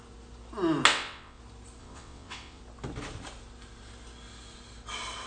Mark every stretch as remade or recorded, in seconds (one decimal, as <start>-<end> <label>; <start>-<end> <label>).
0.0-0.9 recorded; 0.9-1.4 remade; 1.4-1.8 recorded; 1.8-2.6 remade; 2.6-5.3 recorded